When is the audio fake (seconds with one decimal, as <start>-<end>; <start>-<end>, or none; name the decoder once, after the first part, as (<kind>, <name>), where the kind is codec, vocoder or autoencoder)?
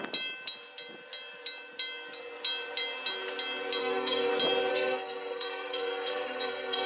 3.8-4.3 (codec, SNAC); 4.7-6.9